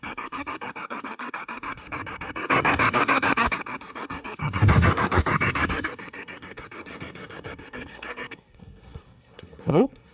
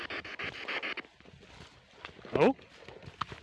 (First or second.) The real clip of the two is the second